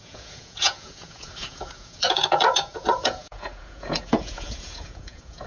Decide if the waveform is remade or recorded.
remade